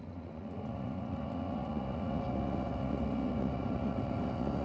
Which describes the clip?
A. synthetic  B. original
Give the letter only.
A